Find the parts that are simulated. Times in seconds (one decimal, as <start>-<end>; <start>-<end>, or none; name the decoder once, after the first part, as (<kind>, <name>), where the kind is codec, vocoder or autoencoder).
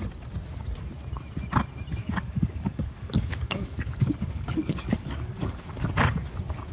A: 2.0-5.9 (codec, DAC)